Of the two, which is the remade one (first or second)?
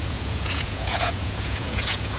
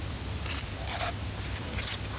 first